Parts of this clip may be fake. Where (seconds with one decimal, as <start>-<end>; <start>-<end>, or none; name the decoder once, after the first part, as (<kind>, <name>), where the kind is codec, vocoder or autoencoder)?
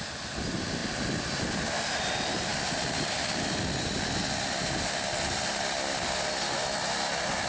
none